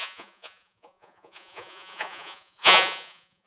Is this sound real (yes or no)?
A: no